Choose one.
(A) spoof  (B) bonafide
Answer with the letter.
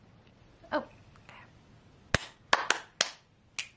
B